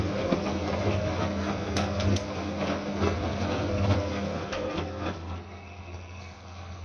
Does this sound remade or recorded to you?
remade